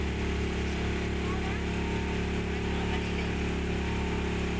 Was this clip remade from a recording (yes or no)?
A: no